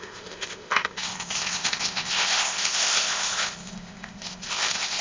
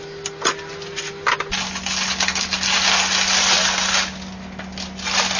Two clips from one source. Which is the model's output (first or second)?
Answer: first